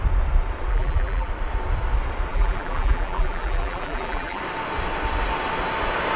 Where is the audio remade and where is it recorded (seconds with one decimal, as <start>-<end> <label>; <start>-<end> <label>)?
0.0-0.7 recorded; 0.7-1.3 remade; 1.3-2.3 recorded; 2.3-4.4 remade; 4.4-6.2 recorded